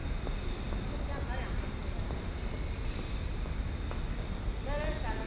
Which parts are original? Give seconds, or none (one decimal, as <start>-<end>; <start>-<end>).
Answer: 0.0-1.8; 2.3-5.3